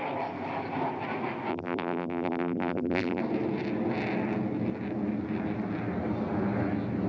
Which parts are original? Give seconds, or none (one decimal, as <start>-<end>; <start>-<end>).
0.0-1.5; 3.2-7.1